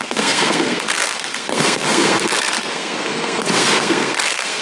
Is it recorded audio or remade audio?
remade